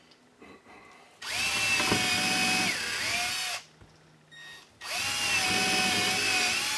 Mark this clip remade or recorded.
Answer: recorded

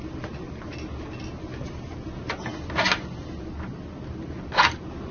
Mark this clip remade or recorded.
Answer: recorded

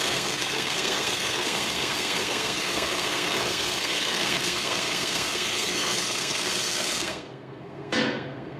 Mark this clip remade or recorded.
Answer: remade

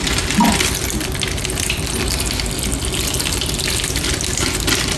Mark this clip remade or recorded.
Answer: recorded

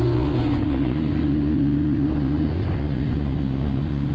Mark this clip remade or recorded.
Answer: remade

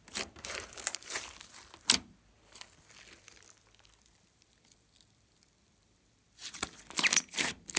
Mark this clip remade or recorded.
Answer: remade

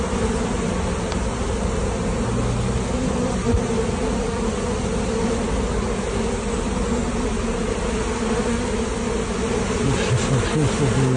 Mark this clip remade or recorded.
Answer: recorded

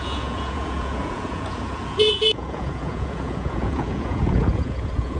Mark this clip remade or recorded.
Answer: remade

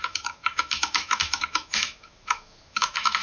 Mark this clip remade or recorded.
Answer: remade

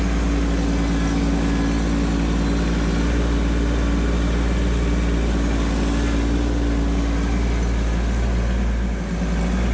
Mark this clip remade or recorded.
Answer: recorded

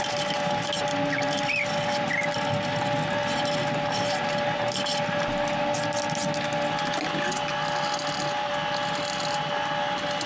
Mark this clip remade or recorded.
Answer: recorded